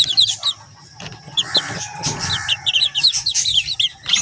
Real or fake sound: real